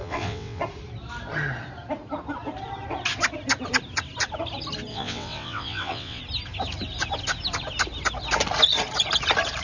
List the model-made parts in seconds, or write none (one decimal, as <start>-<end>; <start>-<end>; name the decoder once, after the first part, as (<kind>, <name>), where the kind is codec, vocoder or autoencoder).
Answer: 0.0-0.6 (vocoder, WaveNeXt); 4.9-6.2